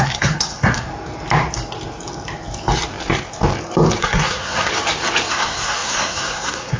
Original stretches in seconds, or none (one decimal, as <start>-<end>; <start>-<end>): 0.9-4.0; 4.7-5.3